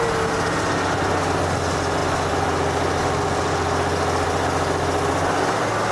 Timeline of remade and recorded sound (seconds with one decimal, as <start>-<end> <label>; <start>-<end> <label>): 0.0-5.9 recorded

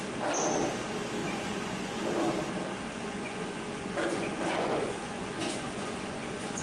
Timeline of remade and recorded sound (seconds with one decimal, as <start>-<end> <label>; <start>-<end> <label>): 0.0-1.2 recorded; 1.2-2.3 remade; 2.3-2.9 recorded; 2.9-6.6 remade